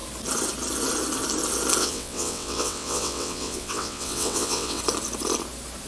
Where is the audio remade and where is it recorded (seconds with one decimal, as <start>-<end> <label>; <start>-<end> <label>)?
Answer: 0.0-1.8 recorded; 1.8-4.8 remade; 4.8-5.9 recorded

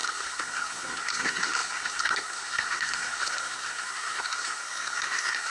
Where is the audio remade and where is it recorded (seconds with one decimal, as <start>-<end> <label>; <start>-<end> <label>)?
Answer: 0.0-5.5 remade

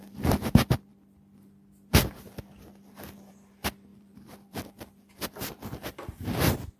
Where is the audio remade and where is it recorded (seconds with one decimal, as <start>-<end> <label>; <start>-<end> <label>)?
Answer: 0.0-3.9 recorded; 3.9-4.7 remade; 4.7-6.8 recorded

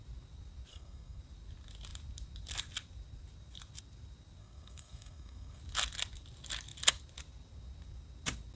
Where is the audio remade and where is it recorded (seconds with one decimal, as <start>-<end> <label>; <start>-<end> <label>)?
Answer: 0.0-0.7 recorded; 0.7-1.2 remade; 1.2-4.4 recorded; 4.4-5.6 remade; 5.6-8.6 recorded

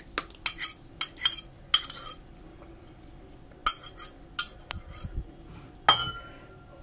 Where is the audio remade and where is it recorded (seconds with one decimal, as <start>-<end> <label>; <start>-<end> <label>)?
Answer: 0.0-6.8 recorded

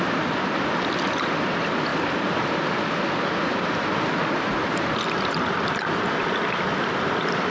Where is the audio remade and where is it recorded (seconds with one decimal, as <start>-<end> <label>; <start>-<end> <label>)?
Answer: 0.0-7.5 remade

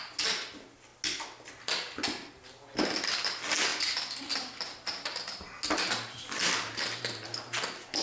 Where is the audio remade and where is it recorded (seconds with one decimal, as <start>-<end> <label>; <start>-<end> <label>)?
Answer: 0.0-8.0 recorded